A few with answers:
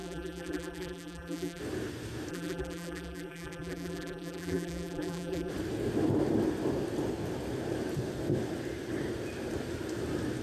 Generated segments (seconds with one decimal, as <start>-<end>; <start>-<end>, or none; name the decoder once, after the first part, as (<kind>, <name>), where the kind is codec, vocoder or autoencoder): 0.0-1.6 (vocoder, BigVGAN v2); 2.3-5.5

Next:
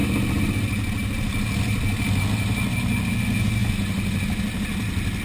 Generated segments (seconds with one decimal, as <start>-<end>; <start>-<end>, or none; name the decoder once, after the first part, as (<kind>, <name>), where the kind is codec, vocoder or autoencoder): none

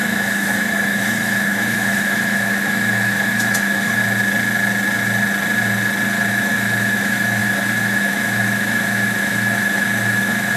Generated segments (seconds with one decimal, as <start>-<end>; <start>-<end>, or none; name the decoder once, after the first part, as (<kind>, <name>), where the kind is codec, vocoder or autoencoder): 0.0-4.0 (autoencoder, DAC-VAE); 6.3-10.6

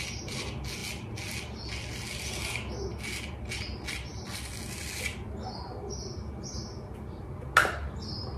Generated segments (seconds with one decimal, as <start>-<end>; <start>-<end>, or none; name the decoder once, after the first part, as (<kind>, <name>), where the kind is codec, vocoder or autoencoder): none

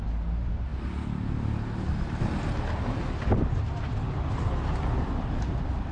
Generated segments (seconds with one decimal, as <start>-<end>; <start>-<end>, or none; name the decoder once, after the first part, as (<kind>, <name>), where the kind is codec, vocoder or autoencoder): none